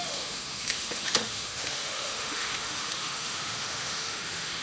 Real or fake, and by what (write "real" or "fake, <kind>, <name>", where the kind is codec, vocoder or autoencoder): fake, autoencoder, DAC-VAE